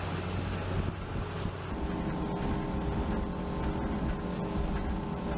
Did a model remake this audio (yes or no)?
no